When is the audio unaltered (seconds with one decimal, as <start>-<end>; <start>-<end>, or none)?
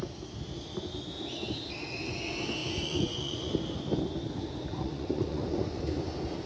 0.0-2.6; 3.5-4.7; 5.8-6.5